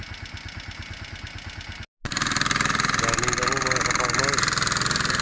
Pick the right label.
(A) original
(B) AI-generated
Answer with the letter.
A